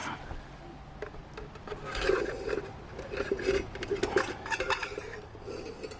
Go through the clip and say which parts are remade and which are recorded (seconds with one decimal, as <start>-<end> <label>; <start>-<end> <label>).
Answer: 0.0-6.0 recorded